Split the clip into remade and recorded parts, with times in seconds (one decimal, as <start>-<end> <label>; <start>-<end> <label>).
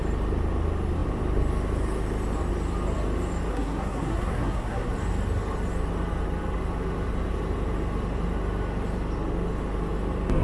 0.0-3.5 recorded; 3.5-4.9 remade; 4.9-10.4 recorded